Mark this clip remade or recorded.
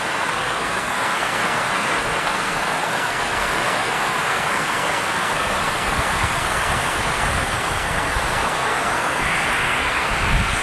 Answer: remade